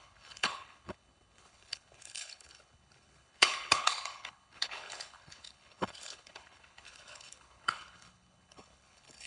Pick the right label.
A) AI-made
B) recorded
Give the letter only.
A